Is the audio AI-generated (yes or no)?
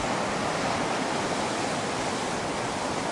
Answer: no